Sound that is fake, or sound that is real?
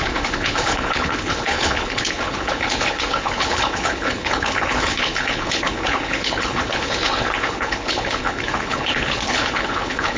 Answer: fake